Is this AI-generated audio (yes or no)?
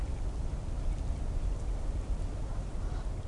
no